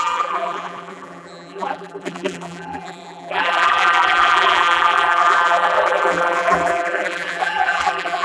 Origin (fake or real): fake